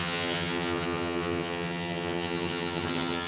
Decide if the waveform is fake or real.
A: fake